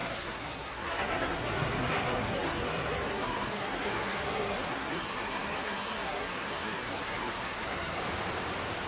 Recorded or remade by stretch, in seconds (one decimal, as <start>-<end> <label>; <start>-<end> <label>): 0.0-8.0 remade; 8.0-8.9 recorded